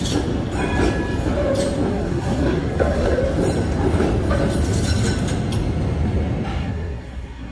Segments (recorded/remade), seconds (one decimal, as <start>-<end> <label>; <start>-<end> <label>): 0.0-1.9 recorded; 1.9-3.2 remade; 3.2-6.6 recorded; 6.6-7.5 remade